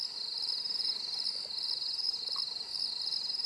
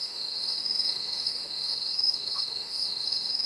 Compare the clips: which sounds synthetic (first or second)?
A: second